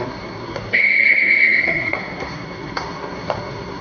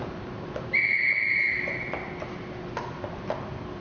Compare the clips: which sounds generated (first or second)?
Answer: first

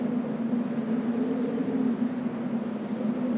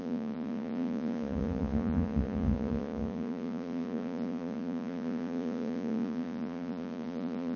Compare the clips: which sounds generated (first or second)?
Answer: second